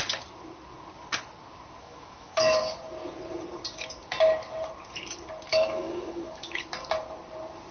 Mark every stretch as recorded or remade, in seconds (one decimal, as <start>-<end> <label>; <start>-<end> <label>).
0.0-1.8 recorded; 1.8-2.6 remade; 2.6-5.5 recorded; 5.5-6.6 remade; 6.6-7.7 recorded